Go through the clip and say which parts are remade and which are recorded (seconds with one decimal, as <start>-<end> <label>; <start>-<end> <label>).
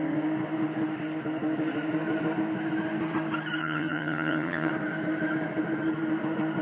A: 0.0-3.6 recorded; 3.6-4.7 remade; 4.7-6.6 recorded